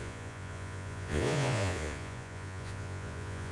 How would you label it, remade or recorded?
remade